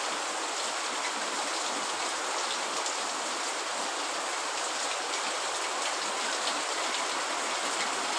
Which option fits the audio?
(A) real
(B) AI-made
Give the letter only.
A